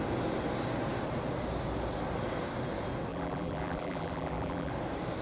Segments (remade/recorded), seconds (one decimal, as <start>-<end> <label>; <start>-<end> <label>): 0.0-3.1 recorded; 3.1-4.7 remade; 4.7-5.2 recorded